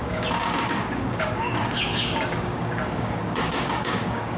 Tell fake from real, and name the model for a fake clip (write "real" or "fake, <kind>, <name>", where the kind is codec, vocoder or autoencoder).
fake, codec, DAC